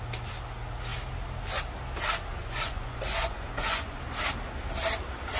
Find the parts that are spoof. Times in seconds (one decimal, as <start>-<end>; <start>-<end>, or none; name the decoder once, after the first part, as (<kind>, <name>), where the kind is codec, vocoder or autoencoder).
2.4-4.0 (vocoder, Vocos)

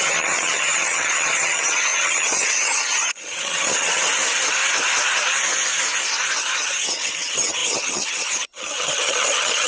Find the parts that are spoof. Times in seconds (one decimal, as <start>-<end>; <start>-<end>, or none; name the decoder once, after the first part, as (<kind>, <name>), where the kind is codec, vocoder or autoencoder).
0.0-4.0 (vocoder, HiFi-GAN); 6.4-9.7

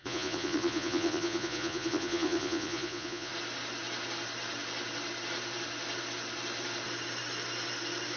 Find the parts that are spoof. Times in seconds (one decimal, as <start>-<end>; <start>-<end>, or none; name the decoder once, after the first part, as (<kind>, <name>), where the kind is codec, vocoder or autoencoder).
0.0-3.3 (vocoder, Vocos)

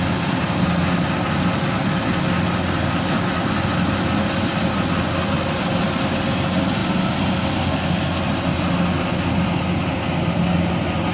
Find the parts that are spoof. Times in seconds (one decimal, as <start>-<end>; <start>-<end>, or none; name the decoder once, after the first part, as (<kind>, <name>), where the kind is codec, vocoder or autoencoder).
none

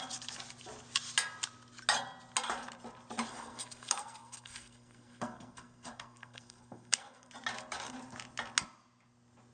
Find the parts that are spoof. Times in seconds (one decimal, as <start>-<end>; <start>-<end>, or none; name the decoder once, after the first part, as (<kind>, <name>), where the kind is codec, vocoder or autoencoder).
3.3-7.3 (codec, SNAC)